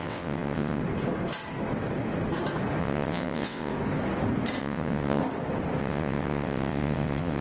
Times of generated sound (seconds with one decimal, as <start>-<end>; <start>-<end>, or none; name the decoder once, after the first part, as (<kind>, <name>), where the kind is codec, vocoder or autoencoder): 0.0-0.8 (vocoder, WaveNeXt); 2.8-3.7; 4.6-5.2; 5.8-7.4